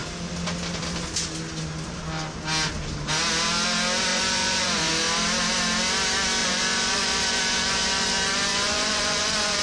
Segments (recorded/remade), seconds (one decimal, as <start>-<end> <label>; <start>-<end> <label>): 0.0-4.1 recorded; 4.1-4.9 remade; 4.9-6.4 recorded; 6.4-9.6 remade